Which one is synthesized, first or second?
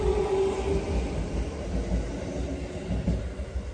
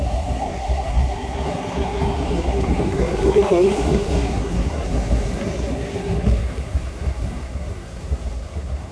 second